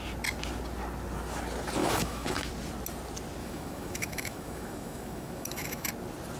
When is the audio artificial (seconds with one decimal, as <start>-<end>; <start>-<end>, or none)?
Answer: 1.8-2.5; 3.4-5.9